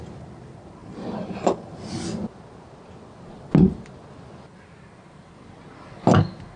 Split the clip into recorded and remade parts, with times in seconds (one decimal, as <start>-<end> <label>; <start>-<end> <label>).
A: 0.0-0.8 recorded; 0.8-1.9 remade; 1.9-6.6 recorded